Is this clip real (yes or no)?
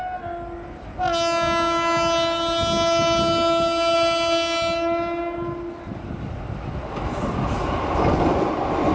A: yes